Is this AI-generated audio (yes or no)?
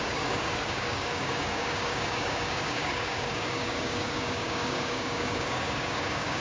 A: yes